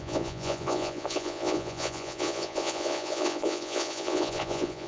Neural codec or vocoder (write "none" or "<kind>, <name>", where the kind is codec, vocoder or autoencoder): vocoder, Vocos